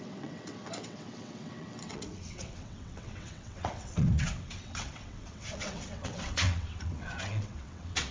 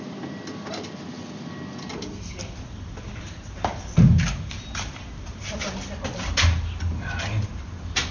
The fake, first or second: first